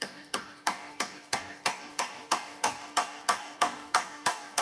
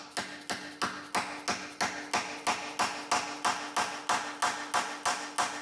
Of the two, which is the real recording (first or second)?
second